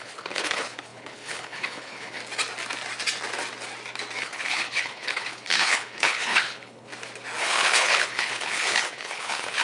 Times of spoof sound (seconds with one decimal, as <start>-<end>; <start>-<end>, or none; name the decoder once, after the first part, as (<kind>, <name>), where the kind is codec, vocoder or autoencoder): 0.0-2.2 (codec, HILCodec); 4.2-6.9; 7.4-9.6